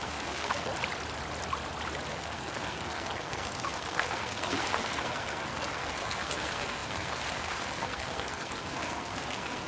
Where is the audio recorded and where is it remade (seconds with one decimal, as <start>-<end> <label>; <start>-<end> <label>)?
0.0-0.7 remade; 0.7-2.1 recorded; 2.1-9.7 remade

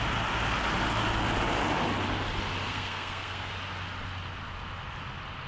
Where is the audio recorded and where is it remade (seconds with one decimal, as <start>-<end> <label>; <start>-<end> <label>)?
0.0-2.7 recorded; 2.7-3.5 remade; 3.5-5.5 recorded